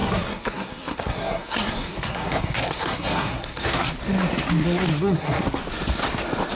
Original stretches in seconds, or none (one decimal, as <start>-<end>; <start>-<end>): 3.9-4.9; 5.6-6.6